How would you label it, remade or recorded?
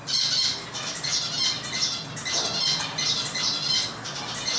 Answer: recorded